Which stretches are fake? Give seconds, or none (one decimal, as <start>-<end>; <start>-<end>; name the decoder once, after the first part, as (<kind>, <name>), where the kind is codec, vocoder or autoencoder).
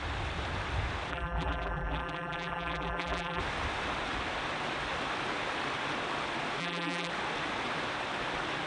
1.1-3.4 (vocoder, BigVGAN v2); 6.6-7.1